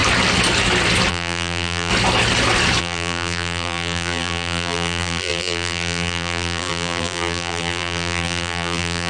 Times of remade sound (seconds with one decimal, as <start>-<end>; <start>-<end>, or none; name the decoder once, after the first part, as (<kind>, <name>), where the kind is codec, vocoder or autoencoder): 1.1-1.9 (vocoder, BigVGAN v2); 2.8-9.1